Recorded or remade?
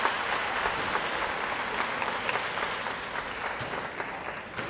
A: recorded